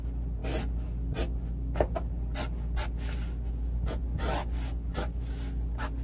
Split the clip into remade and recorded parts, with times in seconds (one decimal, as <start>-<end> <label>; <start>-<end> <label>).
0.0-6.0 recorded